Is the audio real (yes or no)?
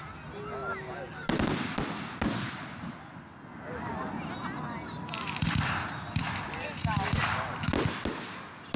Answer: yes